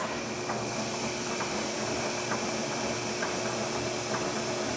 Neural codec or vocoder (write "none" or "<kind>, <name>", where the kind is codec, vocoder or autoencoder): none